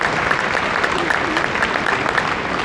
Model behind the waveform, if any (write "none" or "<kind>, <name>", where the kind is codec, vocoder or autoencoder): none